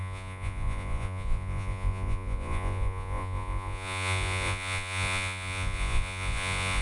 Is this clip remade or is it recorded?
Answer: remade